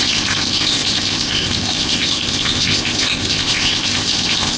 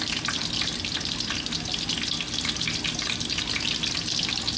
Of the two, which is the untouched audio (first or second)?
second